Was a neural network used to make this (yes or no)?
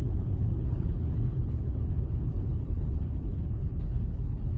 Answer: yes